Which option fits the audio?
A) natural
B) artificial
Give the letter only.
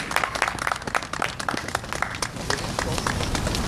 A